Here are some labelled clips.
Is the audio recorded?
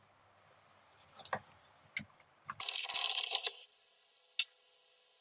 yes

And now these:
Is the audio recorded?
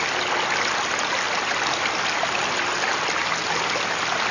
yes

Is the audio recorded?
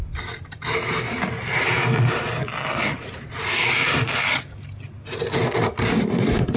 yes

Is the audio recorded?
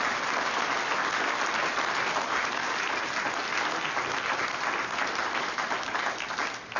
yes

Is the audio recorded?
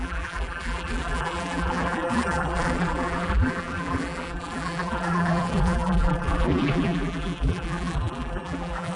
no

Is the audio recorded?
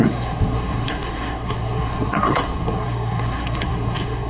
no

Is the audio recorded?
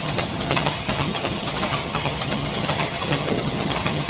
no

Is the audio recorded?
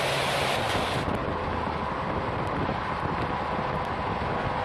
yes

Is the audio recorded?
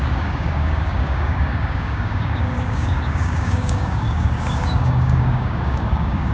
no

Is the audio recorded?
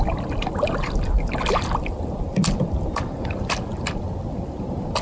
yes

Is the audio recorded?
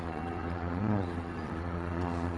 no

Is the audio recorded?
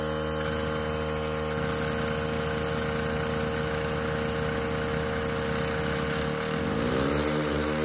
yes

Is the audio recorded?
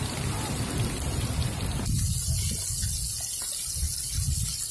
yes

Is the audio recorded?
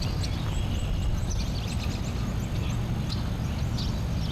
yes